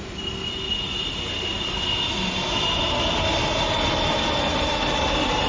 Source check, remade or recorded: recorded